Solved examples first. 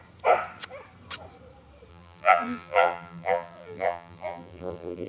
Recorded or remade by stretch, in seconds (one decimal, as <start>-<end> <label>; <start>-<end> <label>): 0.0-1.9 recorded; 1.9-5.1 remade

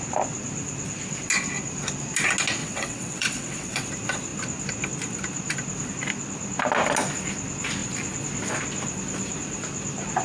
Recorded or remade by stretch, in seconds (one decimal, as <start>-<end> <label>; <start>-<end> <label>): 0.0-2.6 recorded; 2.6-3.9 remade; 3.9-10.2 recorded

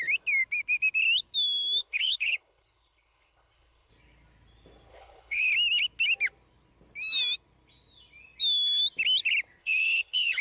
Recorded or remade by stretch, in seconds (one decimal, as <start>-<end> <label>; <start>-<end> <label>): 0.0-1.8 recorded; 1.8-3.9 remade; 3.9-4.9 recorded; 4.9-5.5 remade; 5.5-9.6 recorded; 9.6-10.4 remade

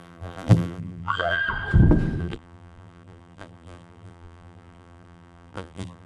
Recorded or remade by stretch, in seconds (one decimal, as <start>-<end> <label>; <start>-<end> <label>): 0.0-1.4 remade; 1.4-2.2 recorded; 2.2-6.1 remade

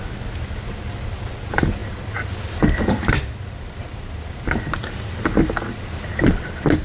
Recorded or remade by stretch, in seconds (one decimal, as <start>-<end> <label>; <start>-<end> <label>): 0.0-6.8 recorded